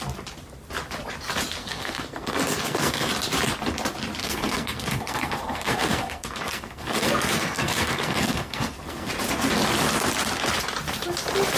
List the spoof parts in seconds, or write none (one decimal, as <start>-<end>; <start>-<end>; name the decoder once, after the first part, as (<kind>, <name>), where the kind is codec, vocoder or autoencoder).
1.6-3.1 (codec, SNAC); 4.2-9.1